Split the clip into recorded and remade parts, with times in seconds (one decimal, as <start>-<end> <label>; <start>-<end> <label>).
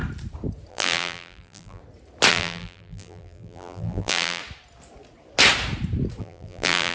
0.0-0.7 recorded; 0.7-1.8 remade; 1.8-2.3 recorded; 2.3-4.4 remade; 4.4-6.2 recorded; 6.2-6.9 remade